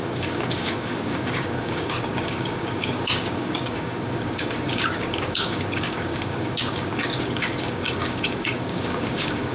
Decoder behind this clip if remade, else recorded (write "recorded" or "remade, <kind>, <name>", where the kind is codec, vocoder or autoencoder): remade, codec, DAC